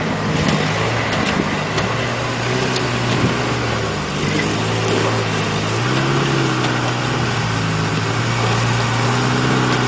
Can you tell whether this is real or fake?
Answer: real